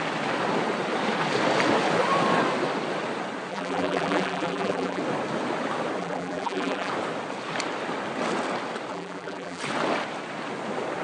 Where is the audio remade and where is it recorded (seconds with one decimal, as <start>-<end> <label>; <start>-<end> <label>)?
0.0-3.5 recorded; 3.5-5.0 remade; 5.0-6.0 recorded; 6.0-6.9 remade; 6.9-8.9 recorded; 8.9-9.6 remade; 9.6-11.0 recorded